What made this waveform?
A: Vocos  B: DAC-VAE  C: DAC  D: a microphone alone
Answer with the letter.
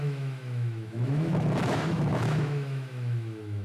B